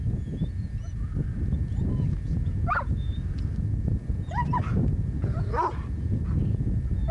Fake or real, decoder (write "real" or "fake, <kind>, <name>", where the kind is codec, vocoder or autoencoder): real